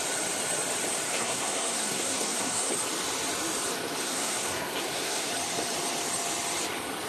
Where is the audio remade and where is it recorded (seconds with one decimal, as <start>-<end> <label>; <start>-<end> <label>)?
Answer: 0.0-1.1 recorded; 1.1-2.7 remade; 2.7-4.0 recorded; 4.0-5.3 remade; 5.3-7.1 recorded